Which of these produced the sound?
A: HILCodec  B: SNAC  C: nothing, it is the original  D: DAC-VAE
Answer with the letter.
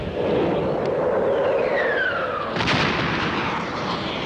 C